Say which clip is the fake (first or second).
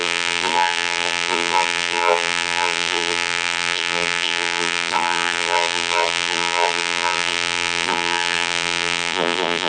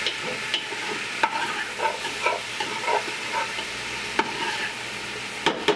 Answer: first